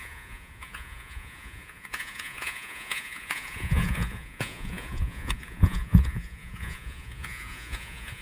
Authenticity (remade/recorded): remade